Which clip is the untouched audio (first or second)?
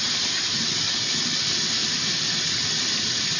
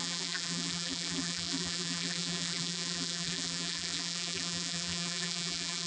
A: first